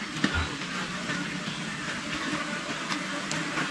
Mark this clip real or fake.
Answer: real